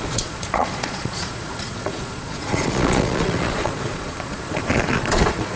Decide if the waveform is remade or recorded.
remade